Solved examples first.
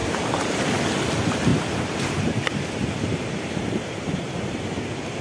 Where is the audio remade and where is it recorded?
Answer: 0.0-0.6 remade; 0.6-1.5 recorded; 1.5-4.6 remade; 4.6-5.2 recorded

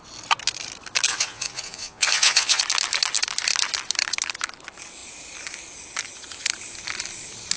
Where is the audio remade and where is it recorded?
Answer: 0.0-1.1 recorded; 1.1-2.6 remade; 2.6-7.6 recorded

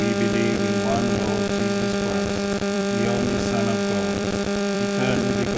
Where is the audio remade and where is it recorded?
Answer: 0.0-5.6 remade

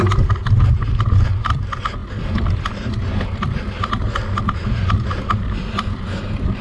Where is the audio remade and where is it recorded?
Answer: 0.0-6.6 recorded

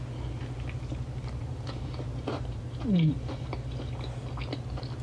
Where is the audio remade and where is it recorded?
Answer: 0.0-0.9 recorded; 0.9-3.9 remade; 3.9-5.0 recorded

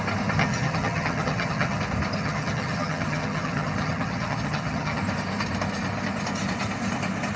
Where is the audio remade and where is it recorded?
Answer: 0.0-0.4 recorded; 0.4-1.8 remade; 1.8-2.2 recorded; 2.2-5.0 remade; 5.0-7.4 recorded

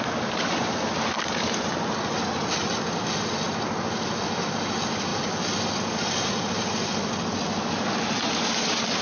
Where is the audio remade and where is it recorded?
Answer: 0.0-9.0 recorded